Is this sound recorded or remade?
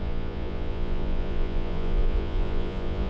remade